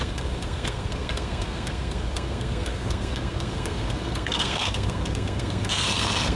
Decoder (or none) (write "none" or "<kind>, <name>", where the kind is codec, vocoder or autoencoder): codec, SNAC